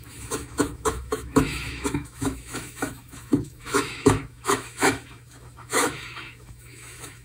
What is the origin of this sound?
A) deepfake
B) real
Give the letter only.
A